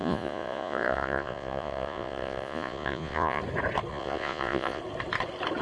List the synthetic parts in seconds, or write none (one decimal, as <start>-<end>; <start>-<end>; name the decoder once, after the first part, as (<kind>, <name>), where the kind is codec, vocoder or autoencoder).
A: 0.0-3.4 (vocoder, Vocos); 3.9-4.8